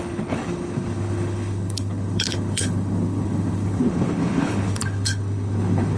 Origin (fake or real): fake